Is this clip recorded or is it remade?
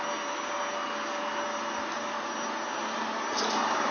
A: recorded